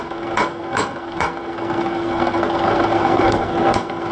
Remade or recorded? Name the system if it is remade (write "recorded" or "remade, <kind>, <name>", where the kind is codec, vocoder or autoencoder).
remade, codec, SNAC